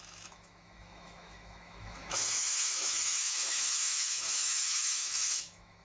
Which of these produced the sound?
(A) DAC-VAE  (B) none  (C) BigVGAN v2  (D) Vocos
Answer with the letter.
A